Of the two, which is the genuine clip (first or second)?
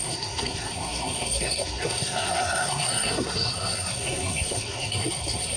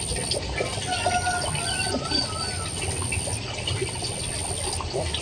second